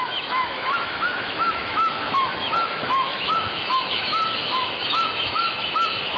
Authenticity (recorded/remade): remade